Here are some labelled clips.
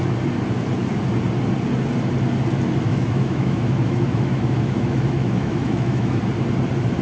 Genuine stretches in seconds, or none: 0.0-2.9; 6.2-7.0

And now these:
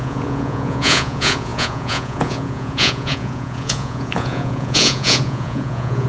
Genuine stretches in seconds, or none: none

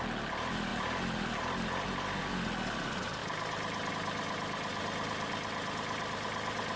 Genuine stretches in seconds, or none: 0.0-6.8

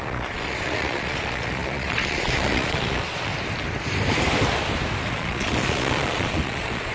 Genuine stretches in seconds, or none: 3.3-5.1

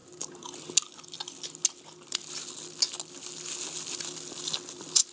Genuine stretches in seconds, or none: 0.0-5.1

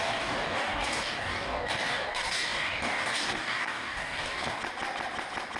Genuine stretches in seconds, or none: 4.6-5.6

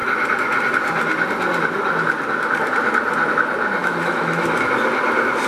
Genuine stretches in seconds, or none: 0.0-3.8; 4.6-5.5

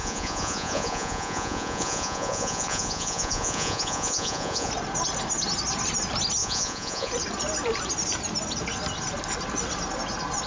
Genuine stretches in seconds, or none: 4.7-6.4; 7.1-10.5